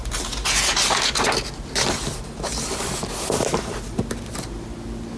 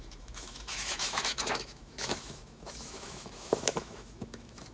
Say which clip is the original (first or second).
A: first